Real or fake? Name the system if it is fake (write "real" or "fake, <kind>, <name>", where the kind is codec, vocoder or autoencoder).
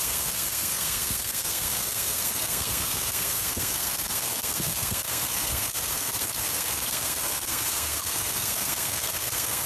fake, codec, SNAC